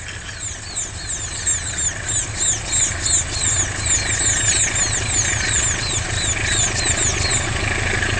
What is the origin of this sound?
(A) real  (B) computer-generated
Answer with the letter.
A